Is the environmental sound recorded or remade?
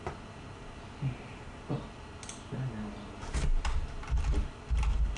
recorded